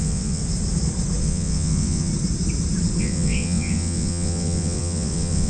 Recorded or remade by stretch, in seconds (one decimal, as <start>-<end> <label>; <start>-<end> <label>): 0.0-0.4 remade; 0.4-1.2 recorded; 1.2-2.1 remade; 2.1-3.0 recorded; 3.0-5.5 remade